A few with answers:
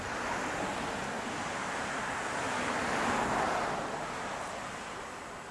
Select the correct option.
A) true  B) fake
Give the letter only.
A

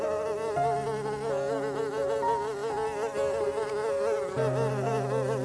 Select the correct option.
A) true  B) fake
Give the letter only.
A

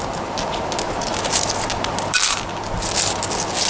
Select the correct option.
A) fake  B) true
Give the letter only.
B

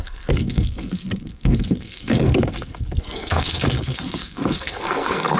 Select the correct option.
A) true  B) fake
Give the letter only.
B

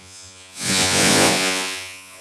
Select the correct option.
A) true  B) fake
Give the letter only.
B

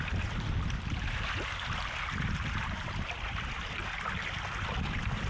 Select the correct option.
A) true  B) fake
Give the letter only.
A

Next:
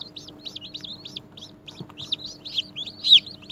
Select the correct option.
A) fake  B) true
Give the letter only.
B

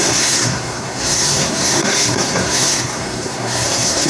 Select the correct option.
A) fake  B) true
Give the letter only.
A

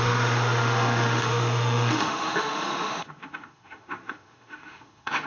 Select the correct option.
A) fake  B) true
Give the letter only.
A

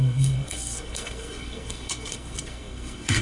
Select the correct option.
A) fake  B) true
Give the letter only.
A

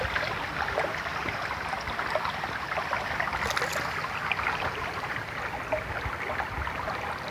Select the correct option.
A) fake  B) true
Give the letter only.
B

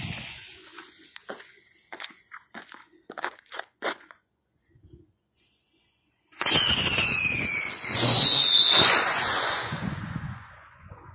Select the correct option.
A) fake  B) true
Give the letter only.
A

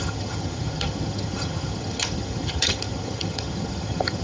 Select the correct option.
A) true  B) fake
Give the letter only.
B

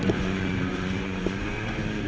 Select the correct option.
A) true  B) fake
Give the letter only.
B